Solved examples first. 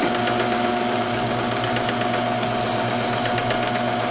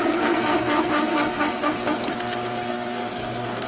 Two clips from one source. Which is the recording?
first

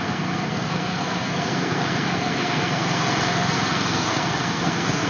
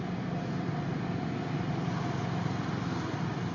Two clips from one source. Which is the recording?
second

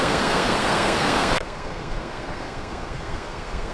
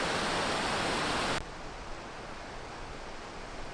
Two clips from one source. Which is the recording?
second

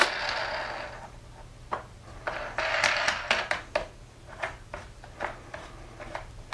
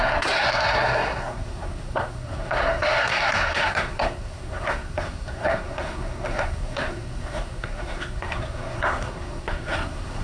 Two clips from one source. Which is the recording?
first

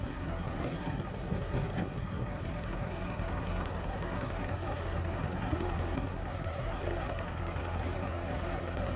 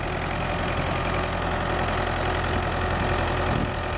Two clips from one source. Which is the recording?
second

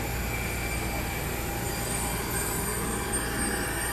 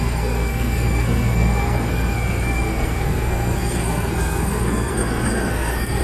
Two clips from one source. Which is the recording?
first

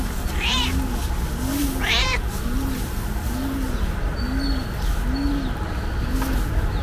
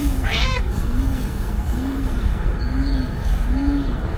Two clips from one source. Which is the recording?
first